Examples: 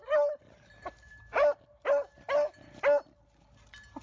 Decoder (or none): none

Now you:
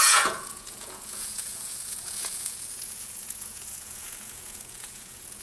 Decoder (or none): vocoder, Vocos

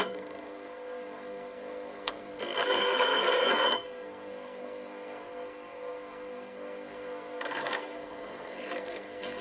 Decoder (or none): codec, SNAC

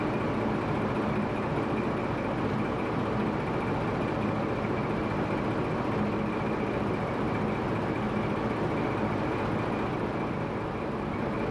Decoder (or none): none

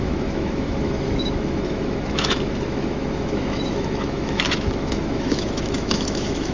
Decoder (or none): autoencoder, DAC-VAE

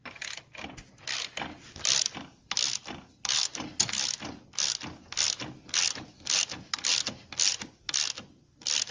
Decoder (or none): none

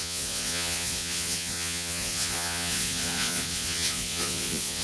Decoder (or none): vocoder, Vocos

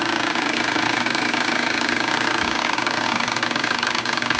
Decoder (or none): codec, DAC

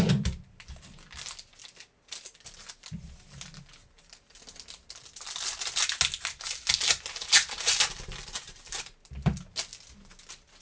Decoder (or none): none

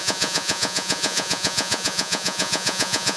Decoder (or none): vocoder, Vocos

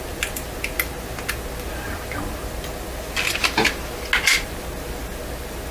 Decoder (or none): none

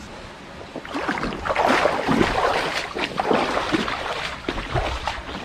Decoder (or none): vocoder, BigVGAN v2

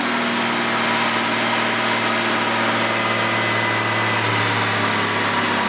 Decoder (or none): none